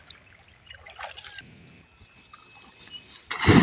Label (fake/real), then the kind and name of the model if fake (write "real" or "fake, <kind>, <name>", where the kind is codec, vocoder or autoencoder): real